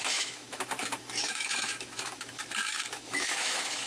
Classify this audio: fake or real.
fake